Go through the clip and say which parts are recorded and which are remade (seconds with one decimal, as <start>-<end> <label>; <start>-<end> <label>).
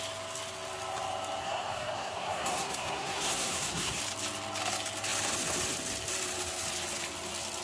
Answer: 0.0-1.4 recorded; 1.4-4.0 remade; 4.0-7.6 recorded